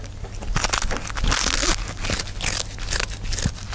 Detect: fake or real real